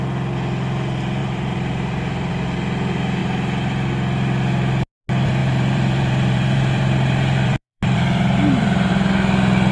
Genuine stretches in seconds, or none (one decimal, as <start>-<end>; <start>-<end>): 0.0-1.2; 2.3-5.4; 8.9-9.7